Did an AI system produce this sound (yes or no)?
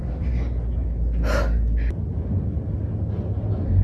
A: no